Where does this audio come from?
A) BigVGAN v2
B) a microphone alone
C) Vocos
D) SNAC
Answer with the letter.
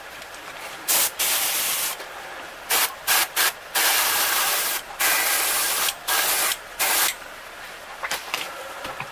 A